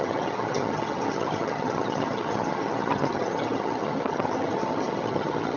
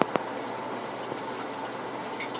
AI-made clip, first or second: first